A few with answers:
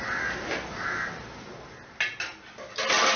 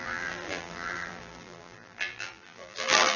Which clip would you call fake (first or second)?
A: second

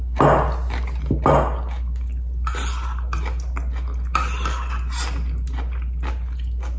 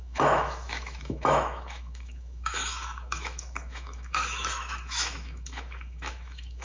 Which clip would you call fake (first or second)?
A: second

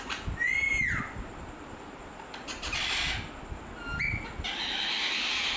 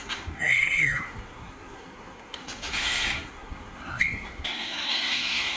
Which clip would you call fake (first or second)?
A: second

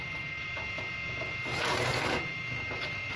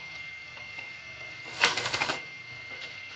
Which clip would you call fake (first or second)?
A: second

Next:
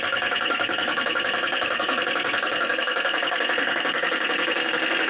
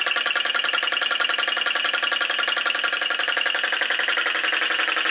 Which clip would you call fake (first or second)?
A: first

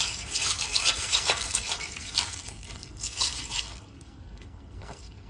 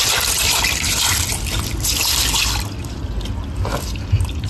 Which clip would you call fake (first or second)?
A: first